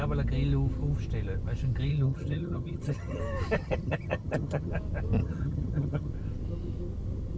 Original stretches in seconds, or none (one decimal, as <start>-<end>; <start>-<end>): 0.0-1.9; 3.2-3.6; 4.7-5.2; 6.1-7.4